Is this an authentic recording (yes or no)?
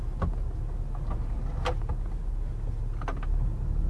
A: yes